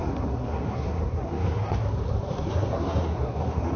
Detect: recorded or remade remade